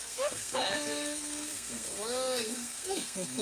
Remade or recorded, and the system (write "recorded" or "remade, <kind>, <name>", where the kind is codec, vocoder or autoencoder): remade, codec, SNAC